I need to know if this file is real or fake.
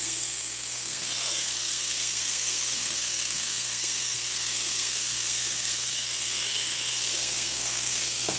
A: fake